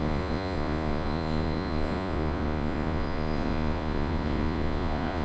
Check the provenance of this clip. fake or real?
fake